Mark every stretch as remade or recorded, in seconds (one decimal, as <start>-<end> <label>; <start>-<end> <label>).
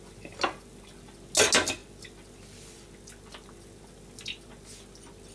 0.0-5.3 recorded